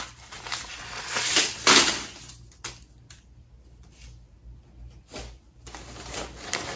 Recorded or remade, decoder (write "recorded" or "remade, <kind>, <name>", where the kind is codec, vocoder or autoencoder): recorded